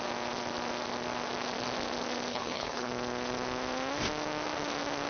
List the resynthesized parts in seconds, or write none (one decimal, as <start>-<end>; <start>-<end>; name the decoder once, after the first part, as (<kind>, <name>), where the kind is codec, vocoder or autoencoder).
2.3-2.9 (codec, HILCodec)